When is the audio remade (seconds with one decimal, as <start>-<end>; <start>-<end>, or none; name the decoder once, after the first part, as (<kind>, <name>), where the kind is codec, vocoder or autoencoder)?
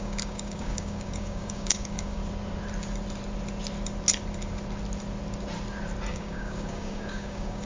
0.0-2.2 (codec, DAC); 6.1-7.7